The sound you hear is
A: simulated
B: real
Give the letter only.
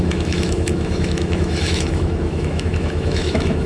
A